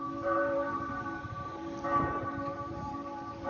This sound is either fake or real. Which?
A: fake